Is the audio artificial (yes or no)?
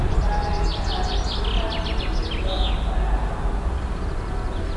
no